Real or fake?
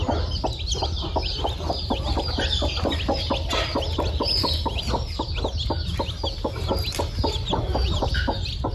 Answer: real